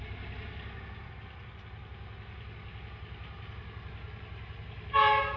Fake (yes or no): no